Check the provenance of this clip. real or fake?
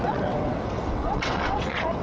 fake